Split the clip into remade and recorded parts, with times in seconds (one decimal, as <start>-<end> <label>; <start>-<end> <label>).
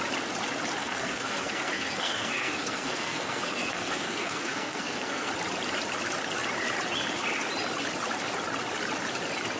0.0-0.8 recorded; 0.8-5.3 remade; 5.3-9.6 recorded